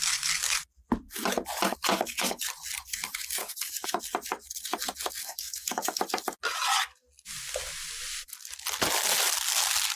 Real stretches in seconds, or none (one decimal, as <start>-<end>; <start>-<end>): 0.0-1.9; 2.4-3.4; 4.0-5.2; 6.0-10.0